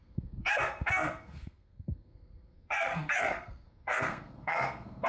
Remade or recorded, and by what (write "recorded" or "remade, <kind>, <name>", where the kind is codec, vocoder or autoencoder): remade, codec, SNAC